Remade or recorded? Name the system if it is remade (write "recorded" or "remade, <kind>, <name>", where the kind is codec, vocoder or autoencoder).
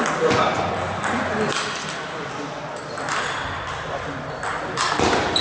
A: recorded